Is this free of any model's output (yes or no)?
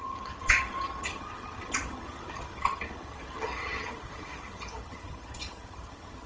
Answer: no